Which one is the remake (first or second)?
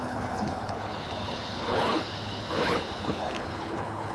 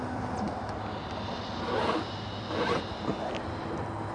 first